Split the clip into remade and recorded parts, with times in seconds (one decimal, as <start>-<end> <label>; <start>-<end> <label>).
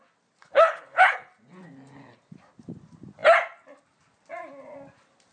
0.0-0.4 recorded; 0.4-1.3 remade; 1.3-5.3 recorded